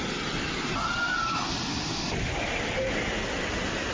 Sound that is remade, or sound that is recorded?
recorded